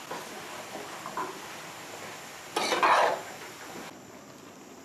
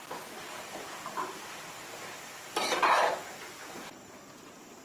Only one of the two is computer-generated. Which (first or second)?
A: second